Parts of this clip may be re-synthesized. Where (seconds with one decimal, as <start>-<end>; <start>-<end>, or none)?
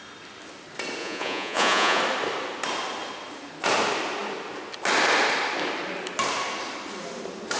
1.0-2.0